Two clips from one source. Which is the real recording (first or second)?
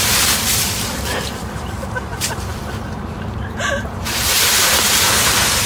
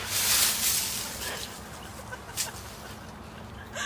second